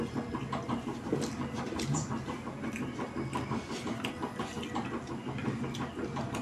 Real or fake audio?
real